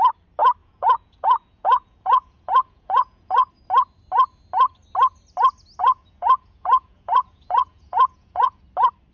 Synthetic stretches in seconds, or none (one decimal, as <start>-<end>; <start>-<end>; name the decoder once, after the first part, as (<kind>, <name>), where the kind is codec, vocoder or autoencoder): 0.6-3.5 (vocoder, Vocos); 5.8-8.6